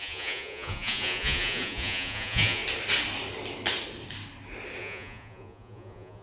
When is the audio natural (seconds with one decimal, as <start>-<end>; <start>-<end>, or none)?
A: 2.6-4.8